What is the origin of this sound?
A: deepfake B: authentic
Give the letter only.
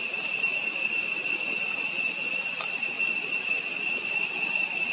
B